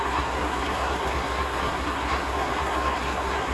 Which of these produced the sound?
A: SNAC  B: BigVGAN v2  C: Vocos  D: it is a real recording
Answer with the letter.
A